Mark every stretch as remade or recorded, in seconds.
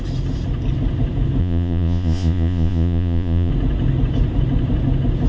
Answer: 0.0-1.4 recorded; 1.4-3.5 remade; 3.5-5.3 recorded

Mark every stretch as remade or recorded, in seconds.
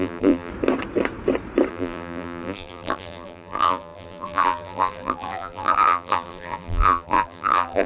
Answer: 0.0-0.5 remade; 0.5-1.7 recorded; 1.7-7.9 remade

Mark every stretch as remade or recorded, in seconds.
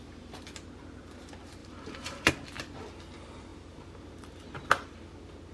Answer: 0.0-1.6 recorded; 1.6-2.3 remade; 2.3-5.5 recorded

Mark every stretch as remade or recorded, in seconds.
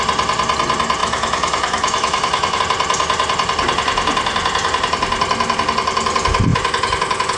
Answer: 0.0-1.0 recorded; 1.0-2.6 remade; 2.6-7.4 recorded